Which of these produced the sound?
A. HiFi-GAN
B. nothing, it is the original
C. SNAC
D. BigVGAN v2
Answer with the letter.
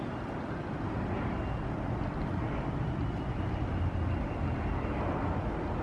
B